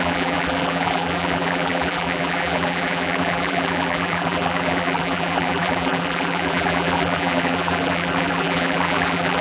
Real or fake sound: fake